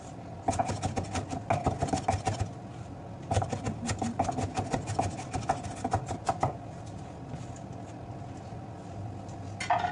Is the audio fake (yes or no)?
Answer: no